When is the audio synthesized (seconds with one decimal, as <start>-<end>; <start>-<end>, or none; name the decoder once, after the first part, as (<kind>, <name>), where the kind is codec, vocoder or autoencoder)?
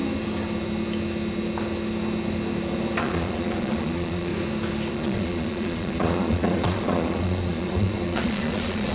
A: 3.0-4.3 (vocoder, Vocos); 4.9-8.9